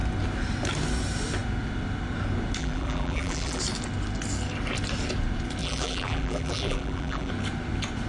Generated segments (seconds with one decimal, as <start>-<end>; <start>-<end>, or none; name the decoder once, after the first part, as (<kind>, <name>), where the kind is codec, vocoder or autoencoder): 2.6-3.6 (vocoder, BigVGAN v2); 5.6-7.3